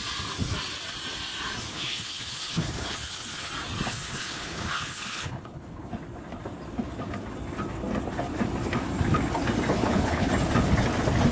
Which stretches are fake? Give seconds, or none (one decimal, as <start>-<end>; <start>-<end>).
1.7-3.5; 3.9-5.9; 9.7-10.3

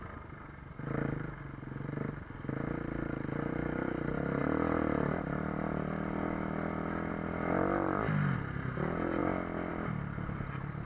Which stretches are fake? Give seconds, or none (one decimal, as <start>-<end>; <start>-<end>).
none

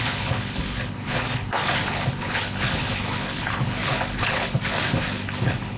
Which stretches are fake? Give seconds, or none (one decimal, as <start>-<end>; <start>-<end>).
0.0-5.8

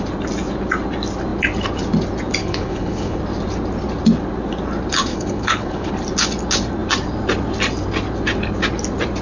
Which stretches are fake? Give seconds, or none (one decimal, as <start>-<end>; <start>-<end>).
2.4-3.2; 5.1-5.9

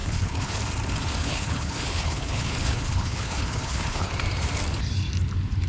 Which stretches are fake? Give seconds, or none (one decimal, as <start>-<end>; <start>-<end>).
0.0-0.6; 1.2-4.1